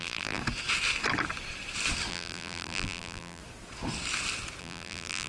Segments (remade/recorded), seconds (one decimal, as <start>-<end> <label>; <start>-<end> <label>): 0.0-0.4 remade; 0.4-2.1 recorded; 2.1-3.4 remade; 3.4-4.6 recorded; 4.6-5.3 remade